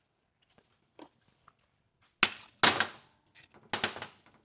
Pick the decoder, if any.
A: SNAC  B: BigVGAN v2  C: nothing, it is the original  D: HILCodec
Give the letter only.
C